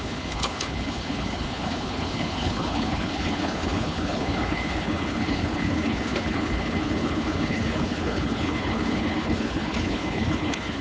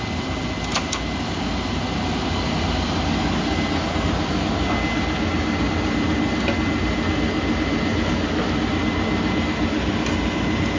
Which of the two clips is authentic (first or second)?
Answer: second